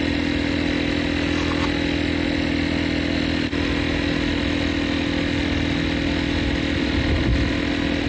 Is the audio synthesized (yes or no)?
no